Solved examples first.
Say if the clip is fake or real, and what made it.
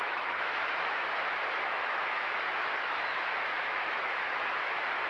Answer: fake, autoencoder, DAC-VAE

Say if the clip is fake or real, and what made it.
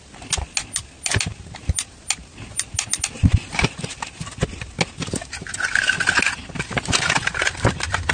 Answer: real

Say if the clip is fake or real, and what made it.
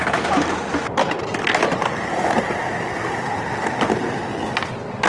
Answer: real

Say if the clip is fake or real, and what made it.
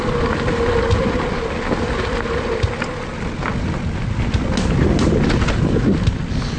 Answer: real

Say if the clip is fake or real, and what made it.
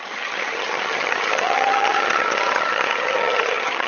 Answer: fake, vocoder, HiFi-GAN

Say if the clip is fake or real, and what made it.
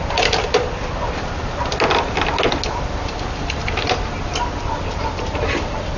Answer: real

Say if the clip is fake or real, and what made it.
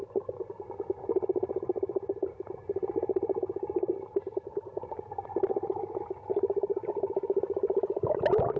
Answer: real